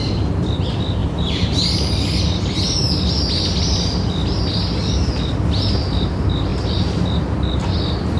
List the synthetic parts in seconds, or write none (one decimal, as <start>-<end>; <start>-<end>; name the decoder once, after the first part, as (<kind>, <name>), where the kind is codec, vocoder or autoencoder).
1.0-1.6 (vocoder, BigVGAN v2)